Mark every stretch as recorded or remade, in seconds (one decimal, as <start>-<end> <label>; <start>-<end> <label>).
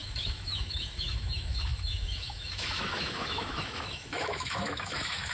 0.0-5.3 remade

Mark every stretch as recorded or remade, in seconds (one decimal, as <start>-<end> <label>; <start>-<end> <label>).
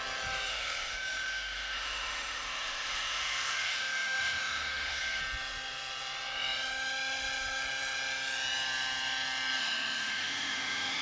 0.0-0.5 recorded; 0.5-5.2 remade; 5.2-9.6 recorded; 9.6-11.0 remade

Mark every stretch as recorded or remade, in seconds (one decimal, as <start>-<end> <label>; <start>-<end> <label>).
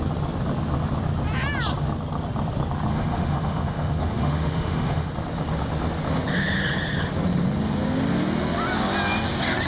0.0-2.9 recorded; 2.9-5.1 remade; 5.1-9.7 recorded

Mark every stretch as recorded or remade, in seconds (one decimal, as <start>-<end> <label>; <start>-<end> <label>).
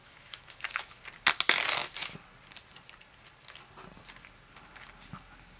0.0-1.0 remade; 1.0-5.6 recorded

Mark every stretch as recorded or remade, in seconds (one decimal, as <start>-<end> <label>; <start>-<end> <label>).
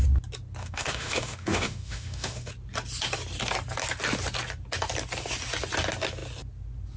0.0-0.6 recorded; 0.6-2.5 remade; 2.5-7.0 recorded